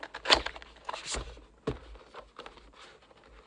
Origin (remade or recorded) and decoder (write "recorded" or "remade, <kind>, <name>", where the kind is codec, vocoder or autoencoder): recorded